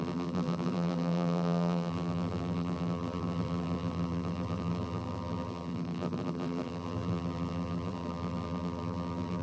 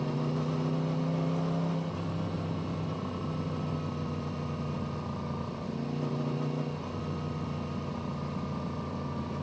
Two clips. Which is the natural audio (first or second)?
second